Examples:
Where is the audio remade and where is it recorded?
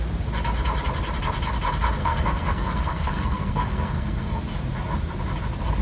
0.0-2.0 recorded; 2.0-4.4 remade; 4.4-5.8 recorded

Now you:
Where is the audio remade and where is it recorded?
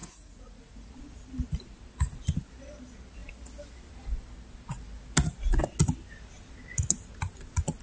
0.0-0.9 remade; 0.9-7.8 recorded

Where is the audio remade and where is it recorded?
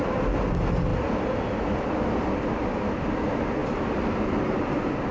0.0-5.1 recorded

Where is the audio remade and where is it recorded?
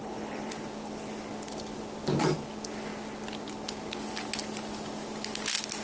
0.0-0.5 remade; 0.5-5.8 recorded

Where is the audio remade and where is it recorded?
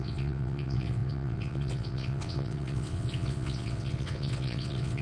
0.0-5.0 remade